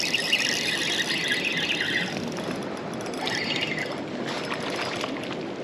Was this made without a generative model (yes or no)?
yes